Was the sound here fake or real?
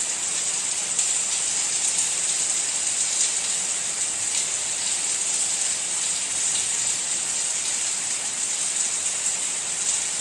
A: real